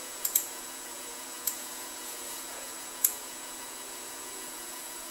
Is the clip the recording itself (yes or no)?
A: no